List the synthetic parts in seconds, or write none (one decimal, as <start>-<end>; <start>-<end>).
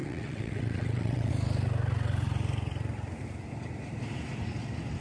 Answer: 0.0-1.3